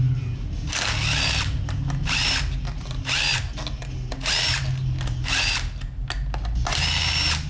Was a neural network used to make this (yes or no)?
no